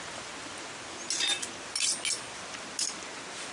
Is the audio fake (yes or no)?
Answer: no